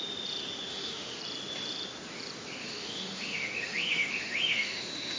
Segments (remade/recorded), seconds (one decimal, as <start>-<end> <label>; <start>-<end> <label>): 0.0-0.7 recorded; 0.7-1.2 remade; 1.2-2.6 recorded; 2.6-5.2 remade